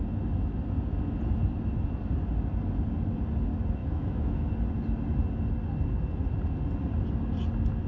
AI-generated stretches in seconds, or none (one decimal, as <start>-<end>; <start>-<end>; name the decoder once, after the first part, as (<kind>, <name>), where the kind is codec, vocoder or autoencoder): 3.8-4.5 (autoencoder, DAC-VAE)